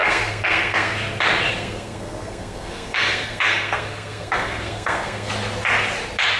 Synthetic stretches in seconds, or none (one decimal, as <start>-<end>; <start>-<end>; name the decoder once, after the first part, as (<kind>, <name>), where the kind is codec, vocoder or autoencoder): 0.0-0.9 (codec, SNAC); 1.5-5.3